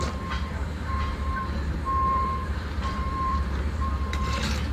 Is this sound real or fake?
fake